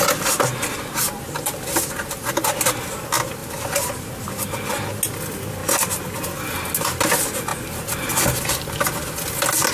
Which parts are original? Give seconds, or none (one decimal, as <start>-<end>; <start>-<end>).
0.0-9.7